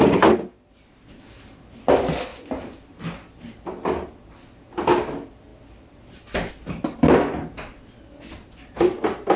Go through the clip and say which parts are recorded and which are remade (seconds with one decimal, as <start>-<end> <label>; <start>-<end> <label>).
0.0-9.4 recorded